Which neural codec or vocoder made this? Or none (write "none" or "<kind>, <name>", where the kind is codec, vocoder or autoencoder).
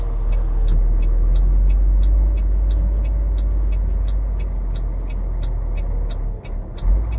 none